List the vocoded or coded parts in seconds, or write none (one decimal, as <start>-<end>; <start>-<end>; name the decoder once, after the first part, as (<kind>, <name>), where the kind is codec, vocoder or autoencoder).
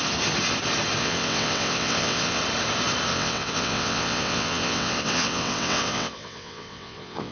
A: 1.0-2.4 (vocoder, WaveNeXt); 3.1-7.3